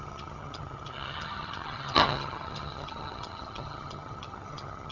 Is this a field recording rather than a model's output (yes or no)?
no